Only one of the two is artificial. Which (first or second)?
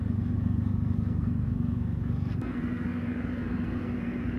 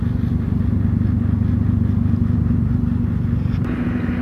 first